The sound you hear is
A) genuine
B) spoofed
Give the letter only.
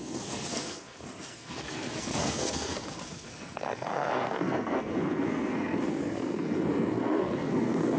B